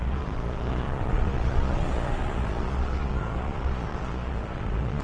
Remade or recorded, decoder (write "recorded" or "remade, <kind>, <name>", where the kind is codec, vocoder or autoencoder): remade, vocoder, Vocos